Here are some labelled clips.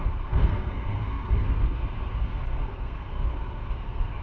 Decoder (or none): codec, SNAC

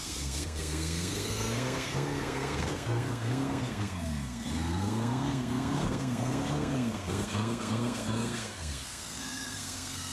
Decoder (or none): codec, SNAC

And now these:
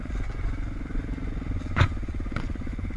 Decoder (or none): vocoder, Vocos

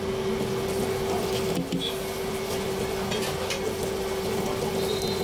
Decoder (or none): none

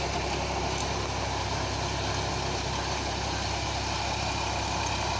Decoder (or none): none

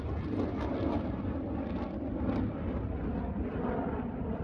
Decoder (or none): none